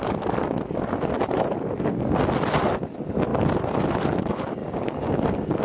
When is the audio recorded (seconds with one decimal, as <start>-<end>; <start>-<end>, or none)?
0.0-5.6